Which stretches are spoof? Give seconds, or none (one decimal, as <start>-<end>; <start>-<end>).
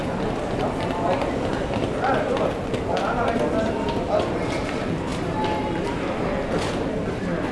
none